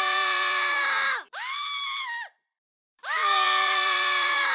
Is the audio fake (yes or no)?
yes